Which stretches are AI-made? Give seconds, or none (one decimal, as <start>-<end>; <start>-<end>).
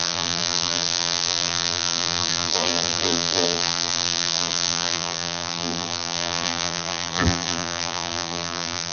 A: 0.0-8.9